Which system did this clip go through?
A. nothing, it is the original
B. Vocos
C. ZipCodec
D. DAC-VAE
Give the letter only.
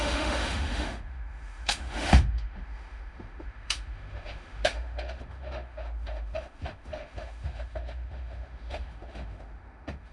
D